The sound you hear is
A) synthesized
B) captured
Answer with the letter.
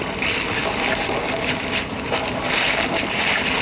B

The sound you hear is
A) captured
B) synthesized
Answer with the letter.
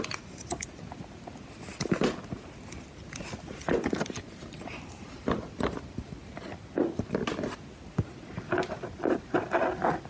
A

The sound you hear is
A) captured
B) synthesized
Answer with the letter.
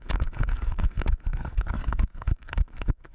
B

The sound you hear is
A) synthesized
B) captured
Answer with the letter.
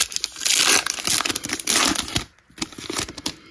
B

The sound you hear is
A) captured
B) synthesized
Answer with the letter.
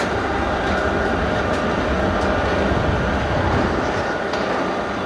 A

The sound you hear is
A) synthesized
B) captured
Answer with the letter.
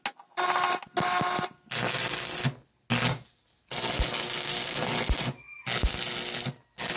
B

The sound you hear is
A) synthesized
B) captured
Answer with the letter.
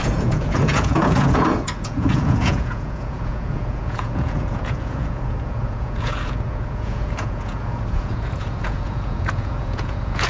A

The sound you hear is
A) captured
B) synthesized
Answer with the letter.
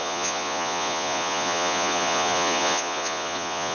B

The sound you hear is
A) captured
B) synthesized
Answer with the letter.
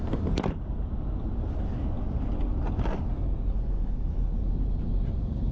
A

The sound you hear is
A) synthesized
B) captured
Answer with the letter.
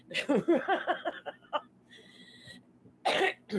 B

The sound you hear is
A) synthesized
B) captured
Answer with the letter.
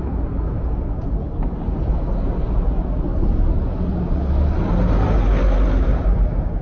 B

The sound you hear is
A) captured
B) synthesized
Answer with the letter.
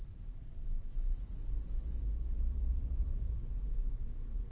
B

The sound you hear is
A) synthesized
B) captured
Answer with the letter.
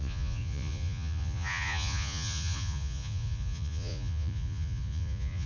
A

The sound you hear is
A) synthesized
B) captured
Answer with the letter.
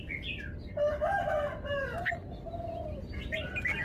B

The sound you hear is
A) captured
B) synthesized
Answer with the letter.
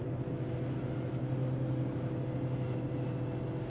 A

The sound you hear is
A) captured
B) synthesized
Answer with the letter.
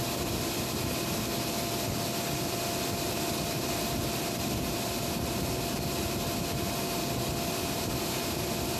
A